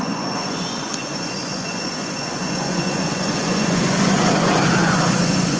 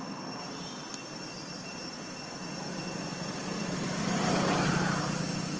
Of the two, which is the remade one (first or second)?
first